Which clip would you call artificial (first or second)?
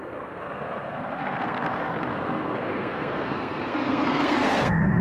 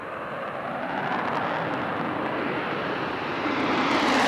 first